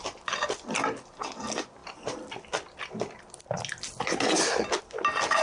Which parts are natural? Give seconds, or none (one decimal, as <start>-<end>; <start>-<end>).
0.0-5.4